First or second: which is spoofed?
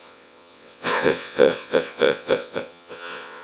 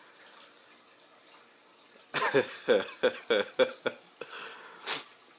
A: first